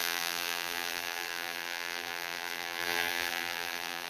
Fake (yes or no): yes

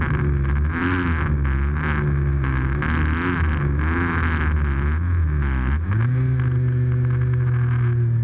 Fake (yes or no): no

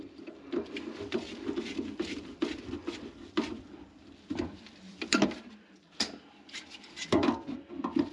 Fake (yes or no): yes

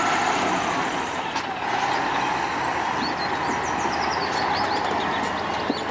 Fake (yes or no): no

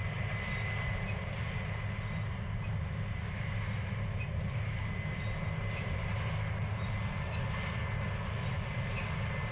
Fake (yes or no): no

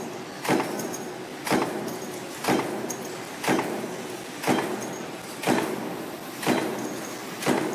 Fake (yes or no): no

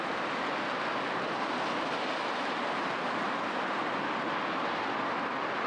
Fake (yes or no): no